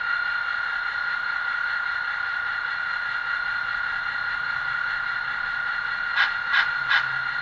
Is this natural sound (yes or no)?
yes